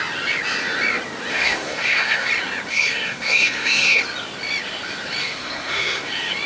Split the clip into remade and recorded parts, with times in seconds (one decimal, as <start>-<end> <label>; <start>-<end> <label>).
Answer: 0.0-1.3 recorded; 1.3-2.3 remade; 2.3-2.7 recorded; 2.7-4.0 remade; 4.0-5.2 recorded; 5.2-6.1 remade; 6.1-6.5 recorded